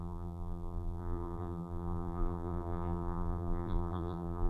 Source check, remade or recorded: remade